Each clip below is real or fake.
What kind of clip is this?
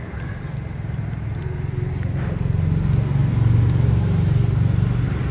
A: real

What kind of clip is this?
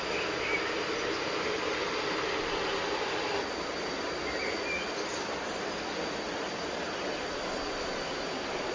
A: real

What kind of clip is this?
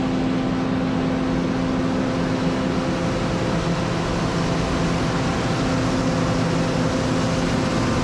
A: real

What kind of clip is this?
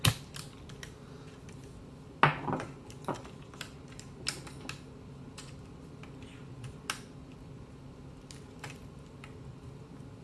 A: real